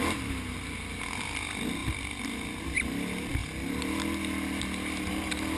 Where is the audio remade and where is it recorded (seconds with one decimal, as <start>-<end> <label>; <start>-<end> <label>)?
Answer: 0.0-5.6 recorded